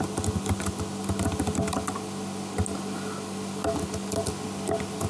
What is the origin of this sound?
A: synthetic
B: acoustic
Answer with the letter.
B